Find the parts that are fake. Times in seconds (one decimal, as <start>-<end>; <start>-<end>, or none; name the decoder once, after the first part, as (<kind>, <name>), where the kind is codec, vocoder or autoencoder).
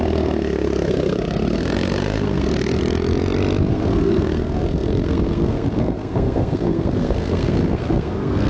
0.0-2.8 (codec, SNAC); 3.7-8.5